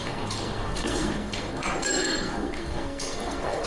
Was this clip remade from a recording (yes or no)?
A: yes